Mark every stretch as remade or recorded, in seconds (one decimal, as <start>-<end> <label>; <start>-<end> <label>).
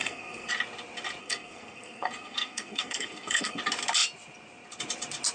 0.0-0.5 remade; 0.5-1.2 recorded; 1.2-3.6 remade; 3.6-5.3 recorded